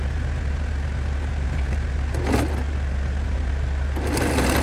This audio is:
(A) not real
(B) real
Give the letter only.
B